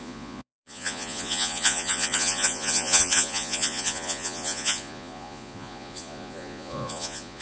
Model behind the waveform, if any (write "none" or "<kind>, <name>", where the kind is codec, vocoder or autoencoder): vocoder, Vocos